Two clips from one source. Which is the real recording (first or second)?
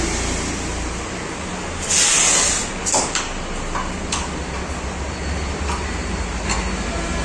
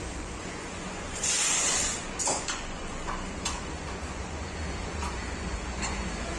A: first